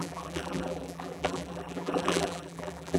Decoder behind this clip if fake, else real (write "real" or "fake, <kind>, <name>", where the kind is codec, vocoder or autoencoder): fake, vocoder, BigVGAN v2